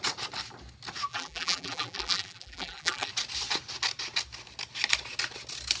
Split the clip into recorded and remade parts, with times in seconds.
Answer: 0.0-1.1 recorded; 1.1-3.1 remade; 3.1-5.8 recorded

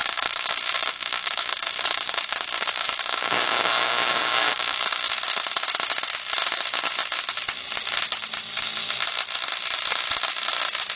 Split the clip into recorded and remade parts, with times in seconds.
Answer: 0.0-5.1 remade; 5.1-11.0 recorded

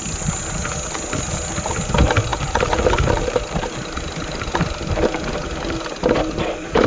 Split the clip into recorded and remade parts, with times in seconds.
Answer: 0.0-6.9 recorded

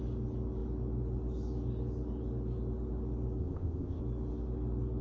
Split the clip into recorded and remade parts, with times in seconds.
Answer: 0.0-3.4 recorded; 3.4-4.0 remade; 4.0-5.0 recorded